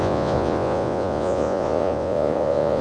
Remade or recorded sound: remade